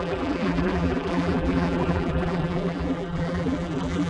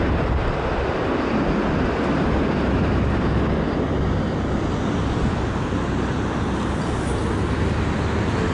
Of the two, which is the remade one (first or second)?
first